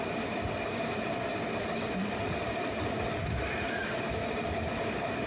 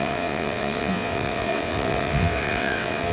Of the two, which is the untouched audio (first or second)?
first